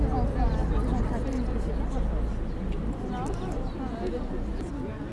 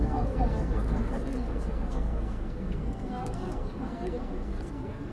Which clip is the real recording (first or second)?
first